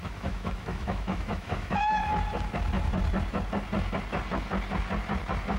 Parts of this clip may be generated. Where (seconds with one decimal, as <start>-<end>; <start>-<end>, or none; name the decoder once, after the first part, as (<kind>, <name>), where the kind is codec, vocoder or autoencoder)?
0.0-2.1 (autoencoder, DAC-VAE)